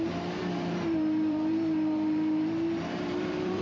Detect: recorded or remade remade